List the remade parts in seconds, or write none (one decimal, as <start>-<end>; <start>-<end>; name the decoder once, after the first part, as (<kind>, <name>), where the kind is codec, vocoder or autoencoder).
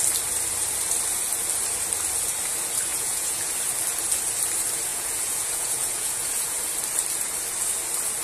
2.9-3.5 (vocoder, Vocos); 4.9-6.6